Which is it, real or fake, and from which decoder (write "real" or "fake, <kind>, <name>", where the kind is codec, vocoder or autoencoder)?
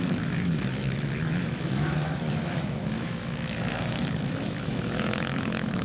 fake, autoencoder, DAC-VAE